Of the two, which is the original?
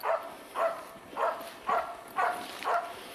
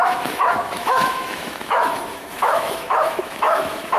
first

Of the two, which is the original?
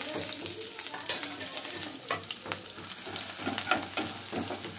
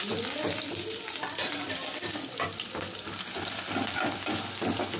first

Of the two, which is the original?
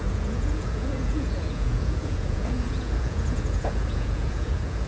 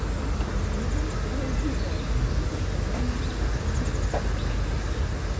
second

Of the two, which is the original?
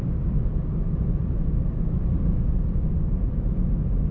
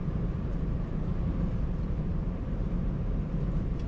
first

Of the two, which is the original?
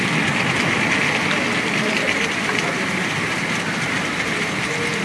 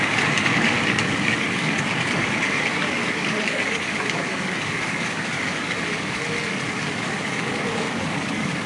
first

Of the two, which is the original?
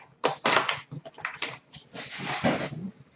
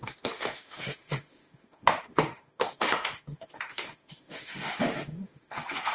first